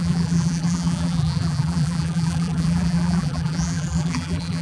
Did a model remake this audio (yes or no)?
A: yes